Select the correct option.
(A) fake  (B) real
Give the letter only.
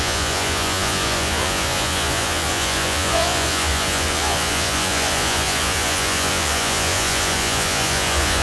A